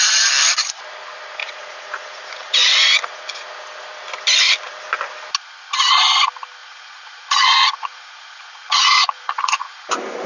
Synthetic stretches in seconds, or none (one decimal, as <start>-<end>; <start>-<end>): 1.4-3.5; 6.6-9.9